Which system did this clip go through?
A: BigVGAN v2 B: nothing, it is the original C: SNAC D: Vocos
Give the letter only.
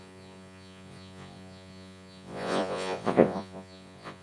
D